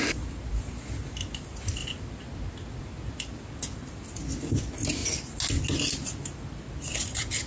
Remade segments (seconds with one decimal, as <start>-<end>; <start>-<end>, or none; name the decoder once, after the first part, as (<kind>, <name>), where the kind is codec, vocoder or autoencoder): none